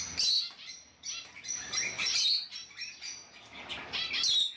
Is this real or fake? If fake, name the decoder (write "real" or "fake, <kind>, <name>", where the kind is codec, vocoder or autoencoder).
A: real